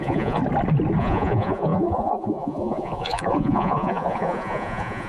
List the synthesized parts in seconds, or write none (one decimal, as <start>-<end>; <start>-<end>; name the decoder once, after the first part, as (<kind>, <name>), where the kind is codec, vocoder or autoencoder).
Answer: 0.0-0.4 (vocoder, Vocos); 1.0-5.1